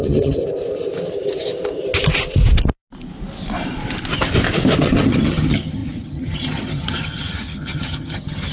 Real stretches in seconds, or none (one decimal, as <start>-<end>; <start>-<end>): 0.4-4.8